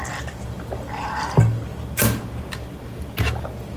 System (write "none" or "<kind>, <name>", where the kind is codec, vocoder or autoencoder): none